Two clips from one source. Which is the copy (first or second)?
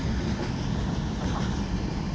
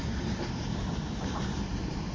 second